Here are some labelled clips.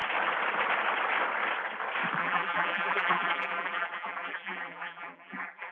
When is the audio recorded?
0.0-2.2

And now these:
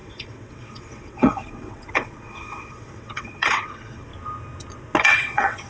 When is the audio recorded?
4.1-5.0

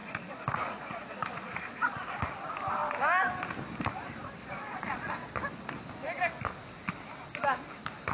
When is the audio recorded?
2.3-4.4; 5.3-8.1

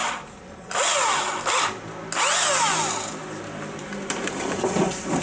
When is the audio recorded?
0.0-5.2

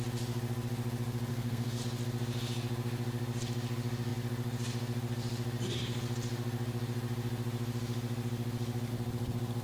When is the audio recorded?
0.0-1.3; 1.8-9.6

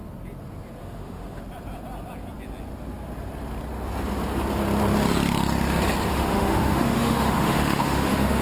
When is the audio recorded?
0.0-0.8; 1.4-6.1

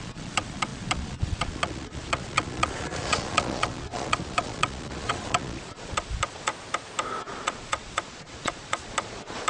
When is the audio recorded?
6.5-7.2